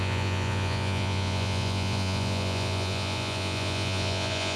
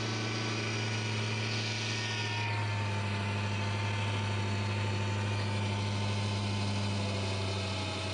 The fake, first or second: first